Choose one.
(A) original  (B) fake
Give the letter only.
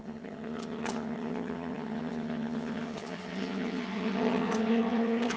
B